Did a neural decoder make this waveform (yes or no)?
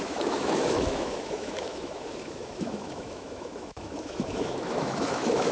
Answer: yes